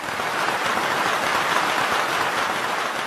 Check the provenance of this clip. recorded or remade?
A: recorded